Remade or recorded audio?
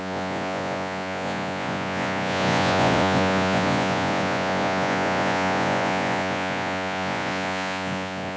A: remade